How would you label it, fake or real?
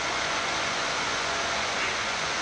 fake